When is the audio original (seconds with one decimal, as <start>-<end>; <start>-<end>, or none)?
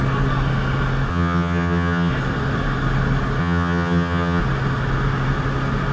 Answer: 0.0-1.1; 2.1-3.4; 4.4-5.9